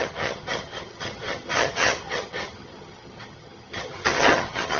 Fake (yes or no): yes